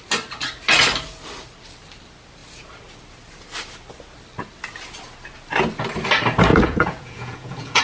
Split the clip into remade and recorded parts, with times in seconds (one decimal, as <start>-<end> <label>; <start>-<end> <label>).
0.0-6.5 recorded; 6.5-7.8 remade